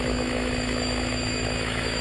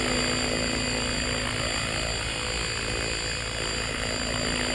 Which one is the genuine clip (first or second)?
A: second